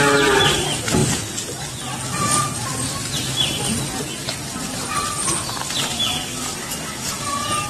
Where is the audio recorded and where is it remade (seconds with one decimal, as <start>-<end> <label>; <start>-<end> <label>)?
0.0-7.7 recorded